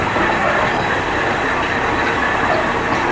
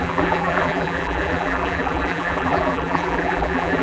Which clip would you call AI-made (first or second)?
second